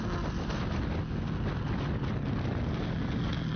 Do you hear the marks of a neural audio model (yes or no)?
no